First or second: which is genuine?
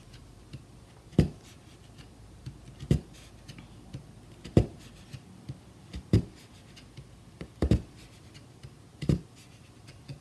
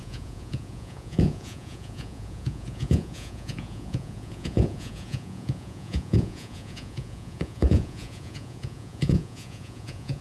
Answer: first